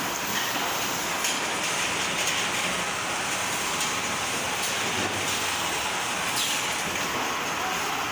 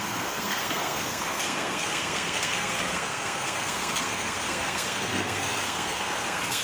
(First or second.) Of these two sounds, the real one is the first